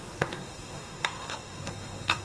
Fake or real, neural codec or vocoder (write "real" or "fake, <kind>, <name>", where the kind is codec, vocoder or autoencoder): fake, codec, SNAC